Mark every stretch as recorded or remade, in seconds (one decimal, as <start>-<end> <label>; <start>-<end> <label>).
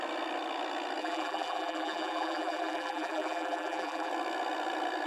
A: 0.0-1.0 recorded; 1.0-4.1 remade; 4.1-5.1 recorded